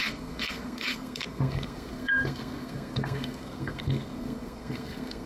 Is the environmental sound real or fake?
fake